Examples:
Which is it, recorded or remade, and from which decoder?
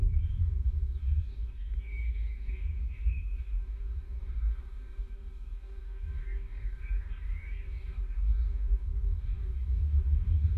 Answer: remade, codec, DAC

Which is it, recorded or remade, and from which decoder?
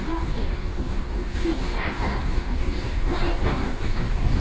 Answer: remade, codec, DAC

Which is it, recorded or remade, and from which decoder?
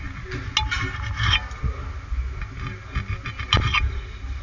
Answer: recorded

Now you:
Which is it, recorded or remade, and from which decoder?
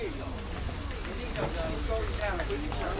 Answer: recorded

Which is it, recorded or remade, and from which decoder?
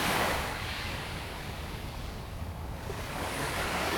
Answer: remade, codec, DAC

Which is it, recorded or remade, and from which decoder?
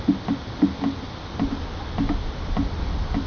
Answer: recorded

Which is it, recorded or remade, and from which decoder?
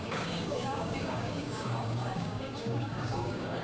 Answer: remade, codec, DAC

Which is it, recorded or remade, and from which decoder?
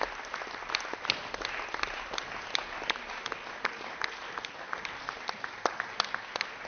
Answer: recorded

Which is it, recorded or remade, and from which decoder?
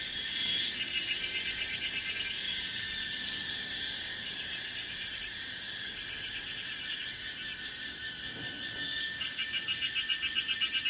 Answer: remade, codec, DAC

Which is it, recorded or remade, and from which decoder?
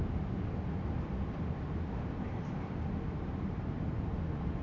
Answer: recorded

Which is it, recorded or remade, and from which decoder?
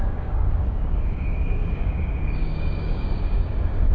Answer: remade, codec, DAC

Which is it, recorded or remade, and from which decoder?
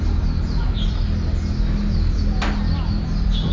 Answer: recorded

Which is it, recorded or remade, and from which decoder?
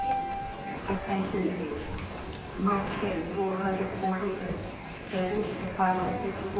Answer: remade, codec, DAC